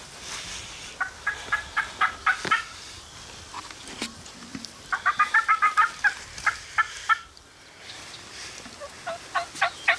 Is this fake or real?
real